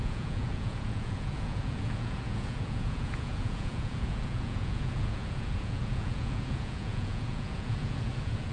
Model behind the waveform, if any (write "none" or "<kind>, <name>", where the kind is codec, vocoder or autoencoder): vocoder, Vocos